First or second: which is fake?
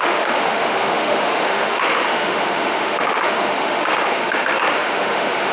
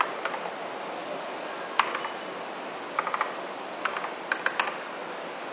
first